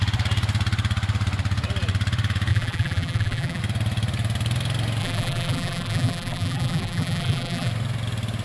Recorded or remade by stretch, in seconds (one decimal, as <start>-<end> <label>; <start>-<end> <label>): 0.0-2.5 recorded; 2.5-3.6 remade; 3.6-5.0 recorded; 5.0-7.7 remade; 7.7-8.4 recorded